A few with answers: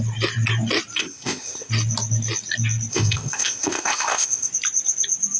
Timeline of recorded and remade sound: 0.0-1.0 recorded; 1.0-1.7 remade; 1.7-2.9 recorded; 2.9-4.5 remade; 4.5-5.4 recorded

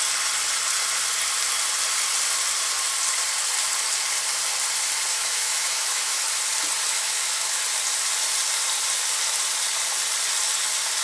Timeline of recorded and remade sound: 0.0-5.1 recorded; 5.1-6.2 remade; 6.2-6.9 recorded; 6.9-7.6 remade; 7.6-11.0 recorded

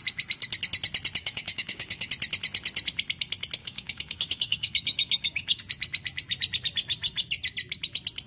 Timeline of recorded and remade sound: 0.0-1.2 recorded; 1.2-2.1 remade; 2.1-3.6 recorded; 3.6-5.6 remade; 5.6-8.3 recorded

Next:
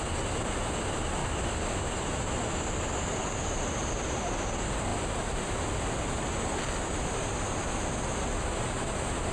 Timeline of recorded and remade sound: 0.0-9.3 recorded

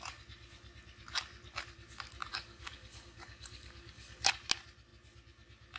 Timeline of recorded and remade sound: 0.0-2.3 recorded; 2.3-4.3 remade; 4.3-5.8 recorded

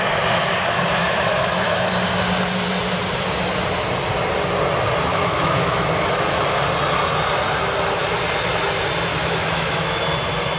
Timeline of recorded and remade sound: 0.0-1.0 recorded; 1.0-1.9 remade; 1.9-5.1 recorded; 5.1-6.6 remade; 6.6-9.1 recorded; 9.1-10.0 remade; 10.0-10.6 recorded

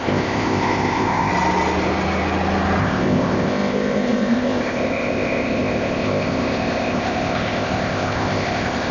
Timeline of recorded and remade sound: 0.0-1.3 remade; 1.3-2.8 recorded; 2.8-8.9 remade